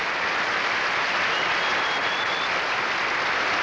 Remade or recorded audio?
recorded